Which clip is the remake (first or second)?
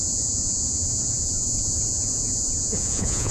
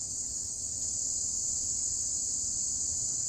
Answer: first